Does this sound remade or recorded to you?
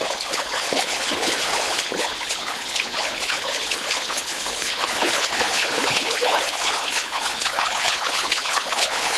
remade